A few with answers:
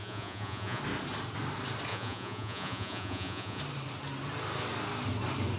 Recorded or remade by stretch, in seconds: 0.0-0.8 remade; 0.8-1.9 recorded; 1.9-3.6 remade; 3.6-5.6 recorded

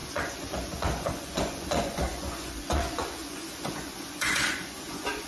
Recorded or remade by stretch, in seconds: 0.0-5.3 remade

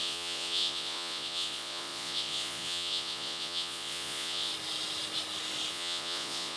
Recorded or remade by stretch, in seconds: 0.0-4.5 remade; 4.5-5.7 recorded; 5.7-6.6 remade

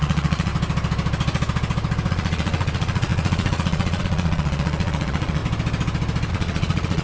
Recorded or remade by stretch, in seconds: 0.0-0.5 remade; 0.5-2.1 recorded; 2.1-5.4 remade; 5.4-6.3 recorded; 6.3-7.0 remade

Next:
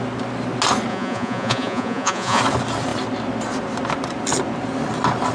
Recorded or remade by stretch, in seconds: 0.0-0.9 recorded; 0.9-2.4 remade; 2.4-5.3 recorded